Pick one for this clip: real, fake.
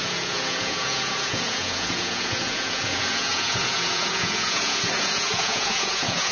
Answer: fake